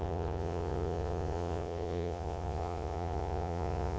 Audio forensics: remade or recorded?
remade